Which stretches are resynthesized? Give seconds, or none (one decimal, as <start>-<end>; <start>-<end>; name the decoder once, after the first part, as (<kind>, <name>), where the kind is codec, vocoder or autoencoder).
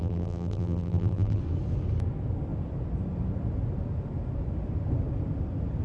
0.0-1.4 (vocoder, BigVGAN v2)